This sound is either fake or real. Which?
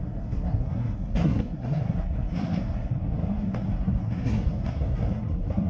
fake